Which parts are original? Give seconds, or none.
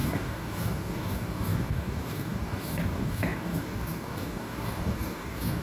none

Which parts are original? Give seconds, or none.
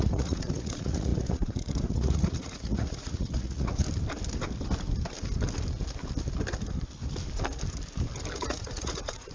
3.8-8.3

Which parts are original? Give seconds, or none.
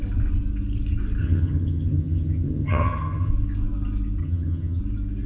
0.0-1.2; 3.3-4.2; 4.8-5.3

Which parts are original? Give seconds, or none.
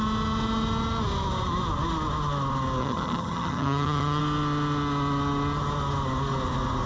0.0-2.8; 4.2-6.9